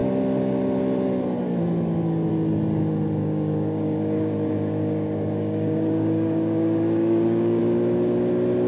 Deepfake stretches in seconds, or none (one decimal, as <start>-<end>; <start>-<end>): 3.2-7.6

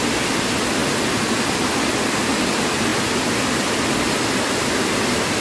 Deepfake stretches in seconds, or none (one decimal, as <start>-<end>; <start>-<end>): none

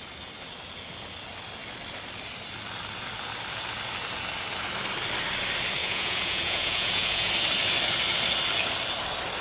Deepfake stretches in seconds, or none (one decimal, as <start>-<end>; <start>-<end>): 5.8-7.3

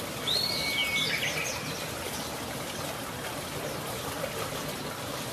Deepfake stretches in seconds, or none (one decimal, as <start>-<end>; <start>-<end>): 0.0-0.8; 4.0-5.3

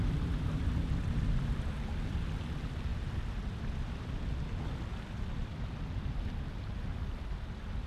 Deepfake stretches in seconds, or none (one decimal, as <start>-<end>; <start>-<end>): none

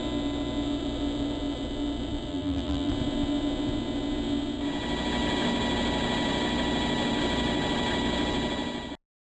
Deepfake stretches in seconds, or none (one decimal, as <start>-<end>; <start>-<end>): 2.3-2.9

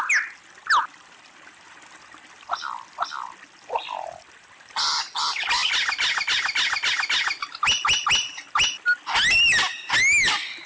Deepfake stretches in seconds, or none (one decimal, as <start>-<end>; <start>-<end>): none